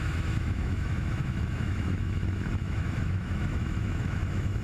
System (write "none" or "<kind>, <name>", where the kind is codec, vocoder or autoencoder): autoencoder, DAC-VAE